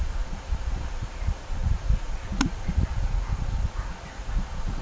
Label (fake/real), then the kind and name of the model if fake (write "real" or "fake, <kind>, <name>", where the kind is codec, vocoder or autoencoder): fake, vocoder, Vocos